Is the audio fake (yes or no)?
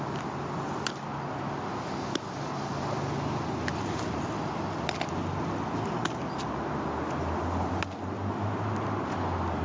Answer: no